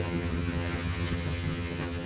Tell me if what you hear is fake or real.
fake